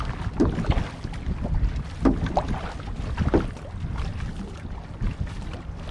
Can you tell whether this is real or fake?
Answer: real